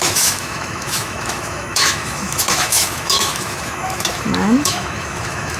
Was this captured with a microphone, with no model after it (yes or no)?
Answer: no